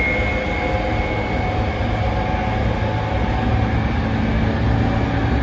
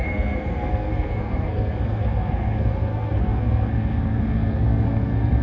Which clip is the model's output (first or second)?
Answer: second